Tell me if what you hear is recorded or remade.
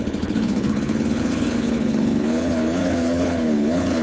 remade